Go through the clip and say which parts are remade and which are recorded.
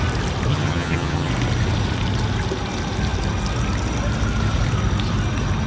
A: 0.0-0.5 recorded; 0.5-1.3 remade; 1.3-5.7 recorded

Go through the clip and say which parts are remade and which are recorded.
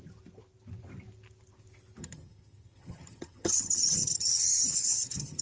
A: 0.0-2.0 recorded; 2.0-5.4 remade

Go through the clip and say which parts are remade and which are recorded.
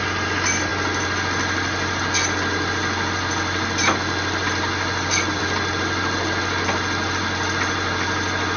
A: 0.0-8.6 recorded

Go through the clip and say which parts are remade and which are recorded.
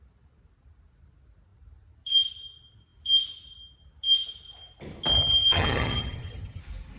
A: 0.0-5.1 recorded; 5.1-6.6 remade; 6.6-7.0 recorded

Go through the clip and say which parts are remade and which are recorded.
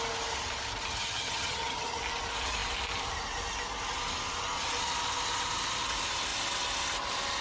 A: 0.0-1.0 recorded; 1.0-2.0 remade; 2.0-7.4 recorded